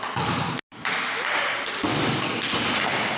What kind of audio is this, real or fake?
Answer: real